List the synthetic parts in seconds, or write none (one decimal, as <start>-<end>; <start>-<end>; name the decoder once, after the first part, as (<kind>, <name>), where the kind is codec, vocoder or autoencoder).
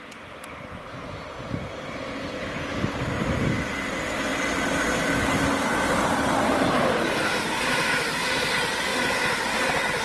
none